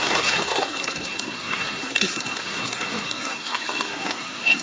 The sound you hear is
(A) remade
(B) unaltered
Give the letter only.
A